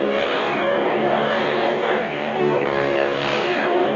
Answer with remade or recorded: remade